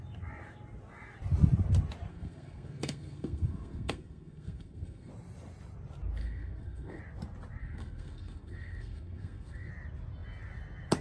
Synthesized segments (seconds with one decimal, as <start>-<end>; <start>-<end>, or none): 2.1-5.1; 6.2-7.0; 7.6-9.7